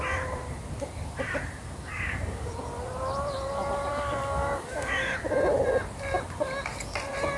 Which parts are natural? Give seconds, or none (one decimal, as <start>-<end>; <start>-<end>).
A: 0.0-1.9; 2.5-3.9; 4.9-7.4